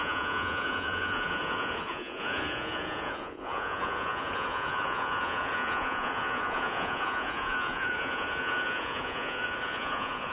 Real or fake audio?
fake